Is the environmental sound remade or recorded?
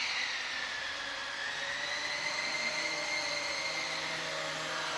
recorded